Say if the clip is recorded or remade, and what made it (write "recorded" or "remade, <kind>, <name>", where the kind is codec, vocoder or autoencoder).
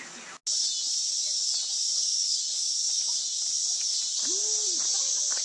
recorded